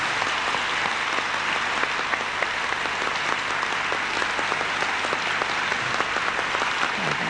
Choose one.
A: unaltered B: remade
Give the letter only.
A